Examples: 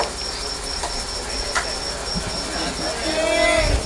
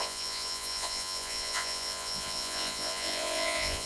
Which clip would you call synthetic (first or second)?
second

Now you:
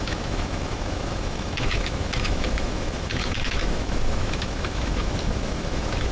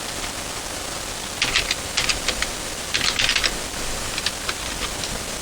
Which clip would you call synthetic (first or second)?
first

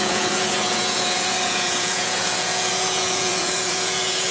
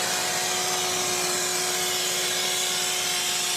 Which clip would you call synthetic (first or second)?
first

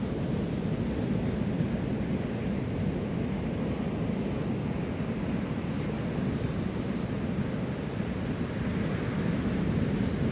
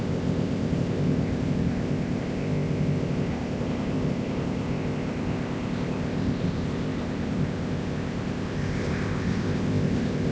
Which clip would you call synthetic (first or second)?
second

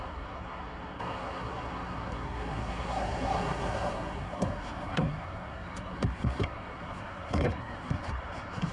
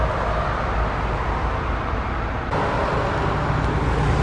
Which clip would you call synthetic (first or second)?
first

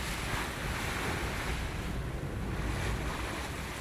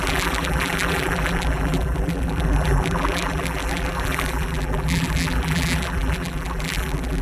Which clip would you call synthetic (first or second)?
second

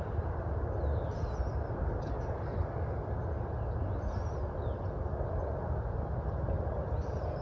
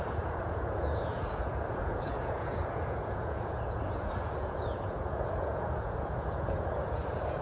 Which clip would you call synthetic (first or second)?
second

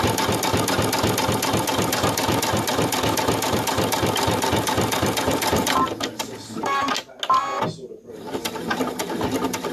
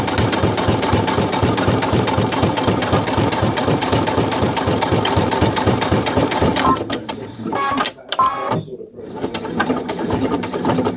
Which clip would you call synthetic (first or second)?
second